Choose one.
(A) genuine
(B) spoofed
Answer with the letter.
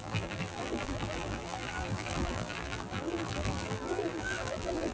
B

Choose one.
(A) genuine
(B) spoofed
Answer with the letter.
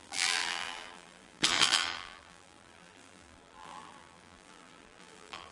B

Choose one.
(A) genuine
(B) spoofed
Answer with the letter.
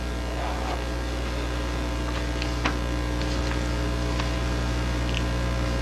A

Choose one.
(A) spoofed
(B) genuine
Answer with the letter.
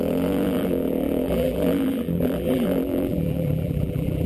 A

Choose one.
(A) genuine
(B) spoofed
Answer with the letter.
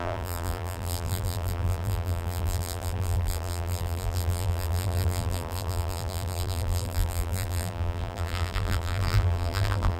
B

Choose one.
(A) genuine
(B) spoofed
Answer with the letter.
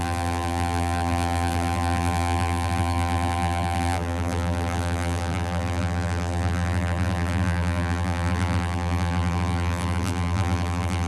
B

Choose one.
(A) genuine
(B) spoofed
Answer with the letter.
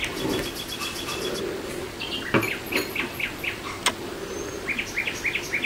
A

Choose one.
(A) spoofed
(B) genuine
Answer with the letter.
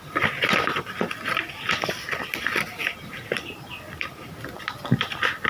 A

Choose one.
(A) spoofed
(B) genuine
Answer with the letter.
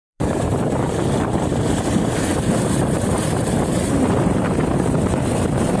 A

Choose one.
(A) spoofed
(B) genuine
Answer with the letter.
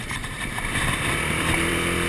A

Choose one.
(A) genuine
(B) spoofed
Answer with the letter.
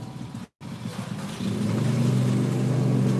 A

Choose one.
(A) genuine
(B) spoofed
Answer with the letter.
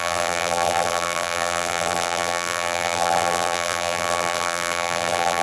B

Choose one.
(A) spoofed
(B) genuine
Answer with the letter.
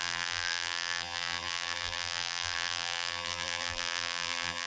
A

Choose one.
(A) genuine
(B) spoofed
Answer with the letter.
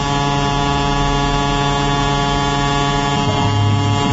A